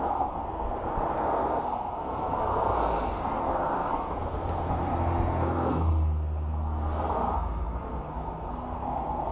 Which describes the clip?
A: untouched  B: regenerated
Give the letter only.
B